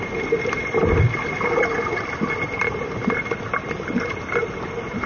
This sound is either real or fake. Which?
real